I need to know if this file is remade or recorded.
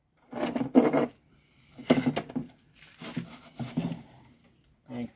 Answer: recorded